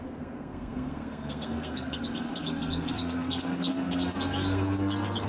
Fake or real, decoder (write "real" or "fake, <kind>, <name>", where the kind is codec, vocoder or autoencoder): fake, codec, SNAC